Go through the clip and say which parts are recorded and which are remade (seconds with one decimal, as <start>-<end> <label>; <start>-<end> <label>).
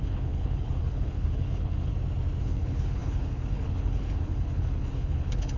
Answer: 0.0-1.9 remade; 1.9-2.4 recorded; 2.4-5.6 remade